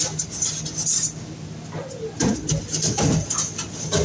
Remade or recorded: recorded